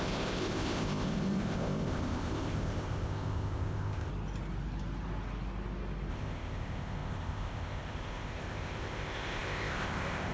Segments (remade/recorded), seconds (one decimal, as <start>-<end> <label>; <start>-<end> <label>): 0.0-4.1 remade; 4.1-6.1 recorded; 6.1-10.3 remade